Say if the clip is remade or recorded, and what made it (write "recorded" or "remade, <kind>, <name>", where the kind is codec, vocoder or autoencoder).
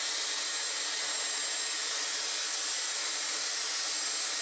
recorded